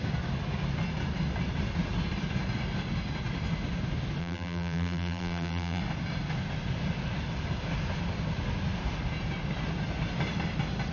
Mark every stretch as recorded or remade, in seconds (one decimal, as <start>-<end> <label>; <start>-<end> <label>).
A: 0.0-4.2 recorded; 4.2-5.8 remade; 5.8-10.9 recorded